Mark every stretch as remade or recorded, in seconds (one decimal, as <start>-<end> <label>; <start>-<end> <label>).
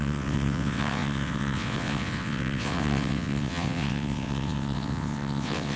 0.0-5.8 remade